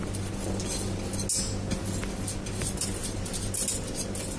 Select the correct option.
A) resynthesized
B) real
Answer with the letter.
B